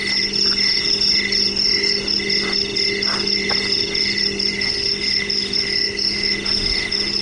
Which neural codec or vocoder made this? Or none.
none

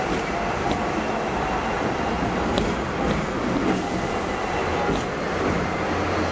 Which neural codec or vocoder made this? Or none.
none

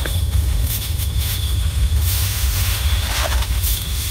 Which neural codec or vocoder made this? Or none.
autoencoder, DAC-VAE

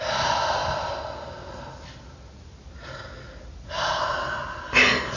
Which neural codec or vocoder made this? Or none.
none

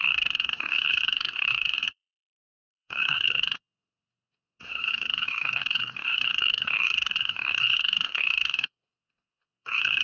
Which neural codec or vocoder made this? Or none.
codec, SNAC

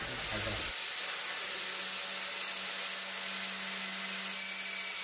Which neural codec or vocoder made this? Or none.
none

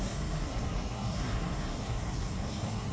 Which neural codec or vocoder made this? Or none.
codec, SNAC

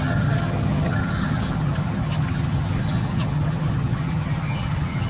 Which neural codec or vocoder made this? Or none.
vocoder, HiFi-GAN